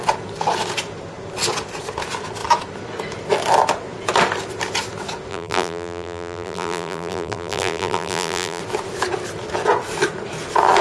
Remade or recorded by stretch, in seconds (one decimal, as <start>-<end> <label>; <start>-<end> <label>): 0.0-5.3 recorded; 5.3-8.6 remade; 8.6-10.8 recorded